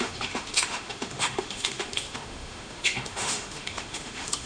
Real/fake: fake